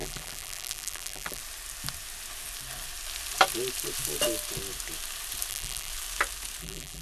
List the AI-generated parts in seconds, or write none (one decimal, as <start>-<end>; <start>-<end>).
0.0-1.4; 5.5-5.9; 6.6-7.0